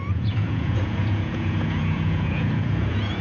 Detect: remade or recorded remade